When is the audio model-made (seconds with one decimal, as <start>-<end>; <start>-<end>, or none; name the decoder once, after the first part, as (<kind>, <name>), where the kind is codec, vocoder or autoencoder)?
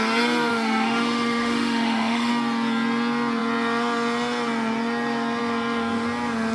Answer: 0.5-2.3 (autoencoder, DAC-VAE)